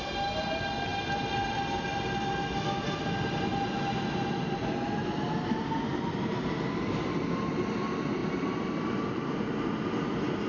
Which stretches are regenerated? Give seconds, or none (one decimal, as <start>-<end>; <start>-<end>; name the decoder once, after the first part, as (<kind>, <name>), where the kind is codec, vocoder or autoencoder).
none